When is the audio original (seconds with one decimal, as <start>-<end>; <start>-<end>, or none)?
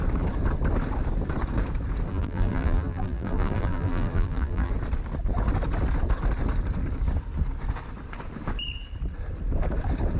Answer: 0.0-2.1; 4.7-10.2